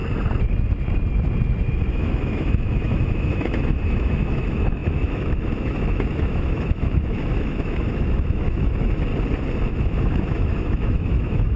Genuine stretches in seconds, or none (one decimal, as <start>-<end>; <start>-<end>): 0.0-1.9; 9.1-9.7